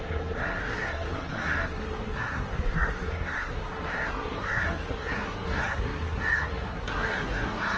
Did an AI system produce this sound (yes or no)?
yes